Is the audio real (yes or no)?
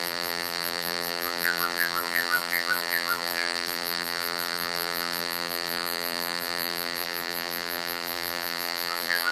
no